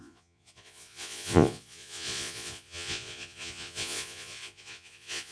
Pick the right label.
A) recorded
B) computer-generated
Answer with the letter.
B